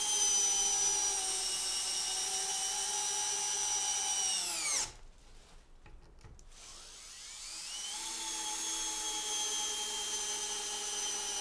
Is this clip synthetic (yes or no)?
no